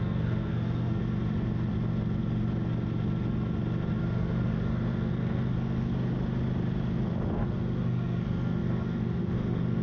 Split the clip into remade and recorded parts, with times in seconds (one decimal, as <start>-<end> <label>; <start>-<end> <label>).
0.0-1.0 remade; 1.0-4.0 recorded; 4.0-5.9 remade; 5.9-7.3 recorded; 7.3-9.8 remade